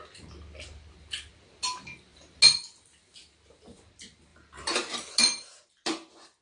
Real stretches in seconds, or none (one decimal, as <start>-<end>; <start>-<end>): 0.0-4.3